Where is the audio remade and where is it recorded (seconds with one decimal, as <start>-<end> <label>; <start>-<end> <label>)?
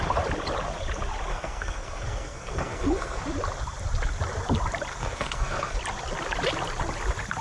0.0-1.3 recorded; 1.3-3.2 remade; 3.2-4.9 recorded; 4.9-5.8 remade; 5.8-7.4 recorded